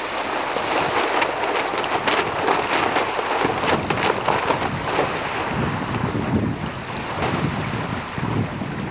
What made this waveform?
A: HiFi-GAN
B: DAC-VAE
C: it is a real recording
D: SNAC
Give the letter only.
C